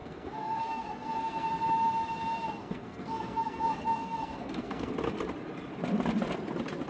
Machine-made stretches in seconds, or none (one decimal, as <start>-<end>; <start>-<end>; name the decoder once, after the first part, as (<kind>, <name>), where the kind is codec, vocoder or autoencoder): 0.0-1.5 (codec, SNAC); 2.6-4.9